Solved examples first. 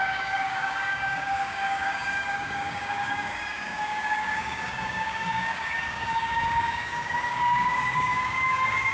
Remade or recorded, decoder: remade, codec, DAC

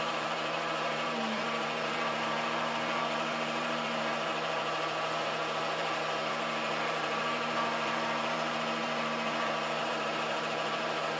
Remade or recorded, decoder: remade, vocoder, BigVGAN v2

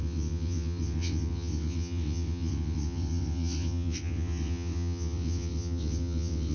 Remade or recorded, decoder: remade, vocoder, WaveNeXt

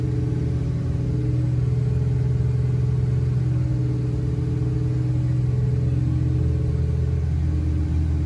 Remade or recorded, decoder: recorded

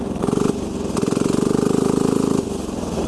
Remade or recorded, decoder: recorded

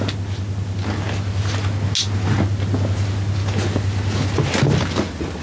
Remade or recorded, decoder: recorded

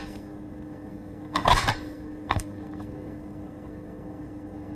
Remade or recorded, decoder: remade, codec, SNAC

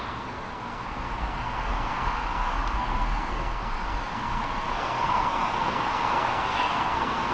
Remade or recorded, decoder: remade, codec, SNAC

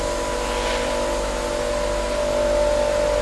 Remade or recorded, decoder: recorded